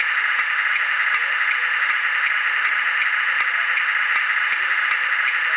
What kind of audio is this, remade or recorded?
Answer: recorded